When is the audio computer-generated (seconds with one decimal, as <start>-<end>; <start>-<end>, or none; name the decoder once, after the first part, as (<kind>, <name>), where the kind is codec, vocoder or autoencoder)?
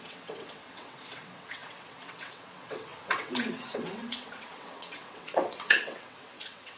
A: 0.0-6.8 (vocoder, WaveNeXt)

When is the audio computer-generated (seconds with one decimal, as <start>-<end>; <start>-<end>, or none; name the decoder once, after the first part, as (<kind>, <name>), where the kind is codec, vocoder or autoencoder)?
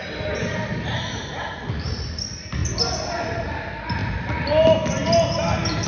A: none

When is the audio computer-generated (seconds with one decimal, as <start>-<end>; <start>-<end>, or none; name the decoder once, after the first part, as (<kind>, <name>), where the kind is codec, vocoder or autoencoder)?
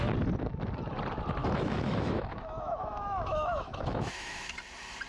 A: 1.4-4.5 (autoencoder, DAC-VAE)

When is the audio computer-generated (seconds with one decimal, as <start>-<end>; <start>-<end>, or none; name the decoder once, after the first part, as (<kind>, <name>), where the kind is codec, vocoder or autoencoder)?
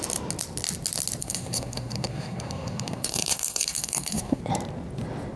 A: 1.2-4.4 (codec, SNAC)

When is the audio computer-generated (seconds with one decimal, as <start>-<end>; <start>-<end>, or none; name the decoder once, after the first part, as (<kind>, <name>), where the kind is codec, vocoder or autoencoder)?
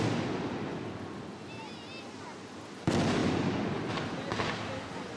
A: none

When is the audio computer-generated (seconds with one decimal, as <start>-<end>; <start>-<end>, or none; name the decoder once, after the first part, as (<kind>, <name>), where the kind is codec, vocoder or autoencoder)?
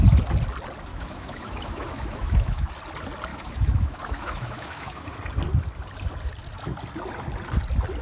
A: 0.9-2.7 (autoencoder, DAC-VAE); 3.3-5.1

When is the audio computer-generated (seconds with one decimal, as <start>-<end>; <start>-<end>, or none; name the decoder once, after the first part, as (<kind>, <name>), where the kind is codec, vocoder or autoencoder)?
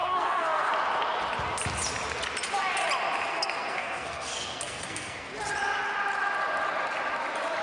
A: 0.0-0.7 (codec, SNAC); 3.3-5.3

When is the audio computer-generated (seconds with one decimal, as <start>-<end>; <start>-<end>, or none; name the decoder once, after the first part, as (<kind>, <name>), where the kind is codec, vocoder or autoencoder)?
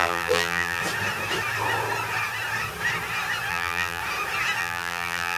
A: 0.0-0.8 (vocoder, BigVGAN v2); 3.5-4.0; 4.6-5.4